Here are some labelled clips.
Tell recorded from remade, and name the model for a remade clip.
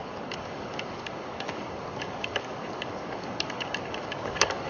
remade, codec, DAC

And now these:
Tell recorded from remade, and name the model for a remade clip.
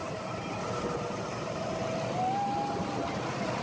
recorded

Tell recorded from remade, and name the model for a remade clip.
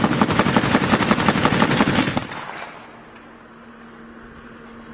recorded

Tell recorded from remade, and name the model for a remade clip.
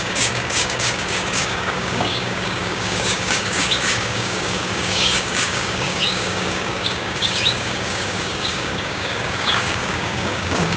remade, codec, DAC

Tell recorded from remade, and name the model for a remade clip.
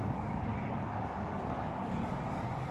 remade, codec, DAC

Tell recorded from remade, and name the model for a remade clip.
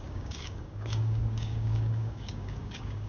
remade, codec, DAC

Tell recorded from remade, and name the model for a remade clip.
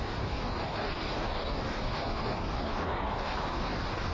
remade, codec, DAC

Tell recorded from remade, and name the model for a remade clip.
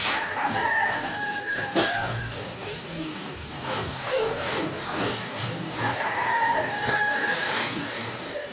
remade, codec, DAC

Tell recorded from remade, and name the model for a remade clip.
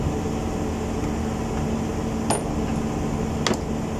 recorded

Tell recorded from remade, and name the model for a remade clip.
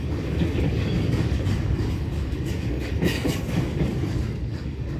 remade, codec, DAC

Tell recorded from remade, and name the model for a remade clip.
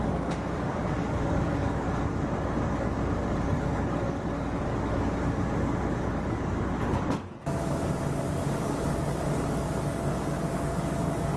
remade, codec, DAC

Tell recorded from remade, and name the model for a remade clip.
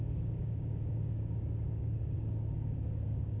remade, codec, DAC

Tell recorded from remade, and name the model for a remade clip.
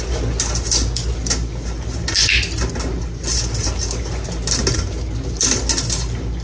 recorded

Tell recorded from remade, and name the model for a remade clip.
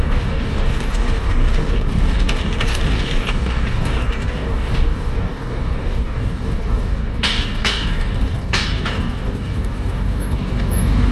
remade, codec, DAC